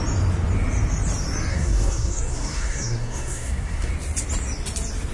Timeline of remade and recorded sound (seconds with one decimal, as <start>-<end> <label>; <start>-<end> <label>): 0.0-1.5 recorded; 1.5-3.9 remade; 3.9-5.1 recorded